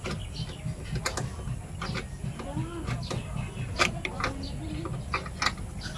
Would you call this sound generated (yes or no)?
no